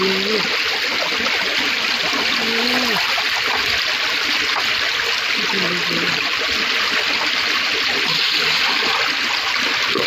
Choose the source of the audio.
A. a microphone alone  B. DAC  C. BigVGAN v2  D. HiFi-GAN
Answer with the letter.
A